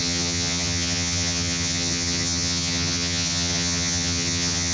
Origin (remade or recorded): remade